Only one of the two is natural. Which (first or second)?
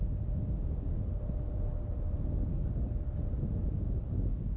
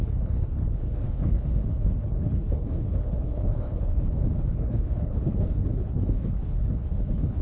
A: first